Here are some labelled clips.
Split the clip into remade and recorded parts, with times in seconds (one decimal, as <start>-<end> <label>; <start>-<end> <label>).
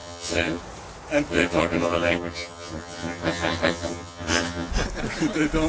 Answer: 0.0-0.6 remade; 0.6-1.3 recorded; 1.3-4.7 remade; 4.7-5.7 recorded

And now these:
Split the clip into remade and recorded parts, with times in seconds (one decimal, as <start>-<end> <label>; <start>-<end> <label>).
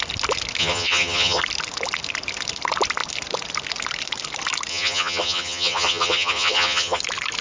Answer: 0.0-0.6 recorded; 0.6-1.4 remade; 1.4-4.7 recorded; 4.7-7.0 remade; 7.0-7.4 recorded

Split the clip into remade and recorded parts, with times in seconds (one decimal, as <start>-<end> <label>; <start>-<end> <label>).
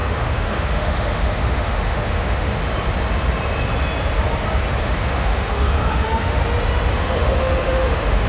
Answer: 0.0-2.6 remade; 2.6-4.8 recorded; 4.8-6.4 remade; 6.4-6.9 recorded; 6.9-8.3 remade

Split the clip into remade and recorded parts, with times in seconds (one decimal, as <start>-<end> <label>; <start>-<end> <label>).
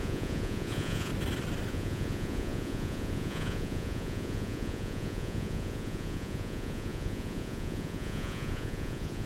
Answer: 0.0-1.1 remade; 1.1-1.7 recorded; 1.7-9.3 remade